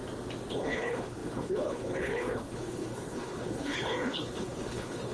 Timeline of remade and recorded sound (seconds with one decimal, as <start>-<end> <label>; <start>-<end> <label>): 0.0-0.5 recorded; 0.5-5.1 remade